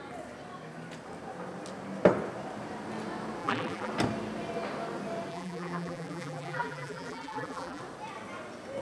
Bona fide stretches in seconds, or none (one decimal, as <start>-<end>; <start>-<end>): 0.0-3.4; 3.9-5.3; 7.8-8.8